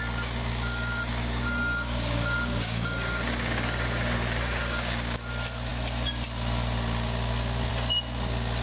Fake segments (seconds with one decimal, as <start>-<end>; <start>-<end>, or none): 0.5-5.3